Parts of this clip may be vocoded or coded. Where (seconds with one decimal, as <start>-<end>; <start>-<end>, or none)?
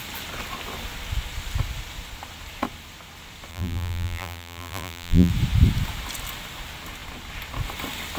3.5-5.3